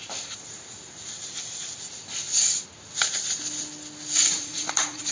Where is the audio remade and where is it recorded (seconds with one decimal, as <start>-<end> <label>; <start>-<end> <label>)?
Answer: 0.0-4.2 recorded; 4.2-5.1 remade